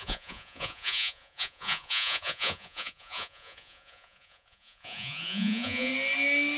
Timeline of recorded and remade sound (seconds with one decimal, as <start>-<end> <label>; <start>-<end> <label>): 0.0-5.9 remade; 5.9-6.6 recorded